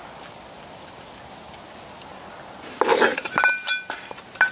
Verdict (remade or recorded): recorded